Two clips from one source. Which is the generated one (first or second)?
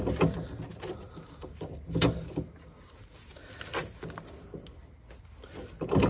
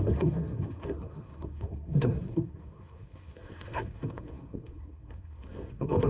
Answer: second